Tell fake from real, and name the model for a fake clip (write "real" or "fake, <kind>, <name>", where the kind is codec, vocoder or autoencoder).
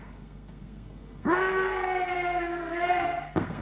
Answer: fake, codec, SNAC